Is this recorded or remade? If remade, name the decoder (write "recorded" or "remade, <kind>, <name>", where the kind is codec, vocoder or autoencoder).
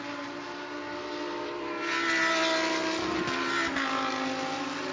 recorded